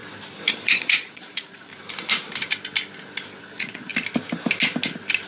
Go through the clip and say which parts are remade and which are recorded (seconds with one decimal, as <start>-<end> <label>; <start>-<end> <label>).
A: 0.0-0.5 recorded; 0.5-1.7 remade; 1.7-3.4 recorded; 3.4-3.9 remade; 3.9-5.3 recorded